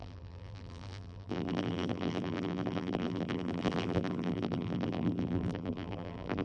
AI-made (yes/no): yes